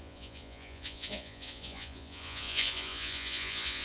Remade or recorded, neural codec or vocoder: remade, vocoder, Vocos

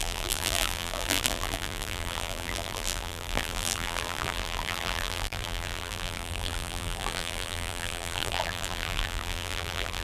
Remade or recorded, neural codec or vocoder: remade, vocoder, BigVGAN v2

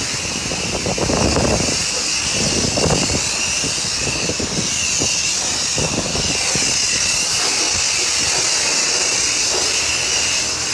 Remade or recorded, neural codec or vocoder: recorded